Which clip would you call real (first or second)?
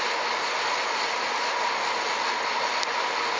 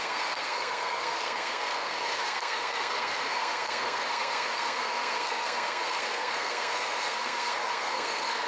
first